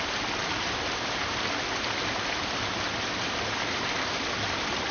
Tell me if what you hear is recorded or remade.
recorded